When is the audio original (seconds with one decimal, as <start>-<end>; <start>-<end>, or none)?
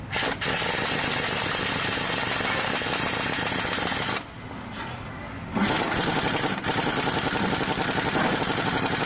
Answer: 0.0-6.9; 8.4-9.1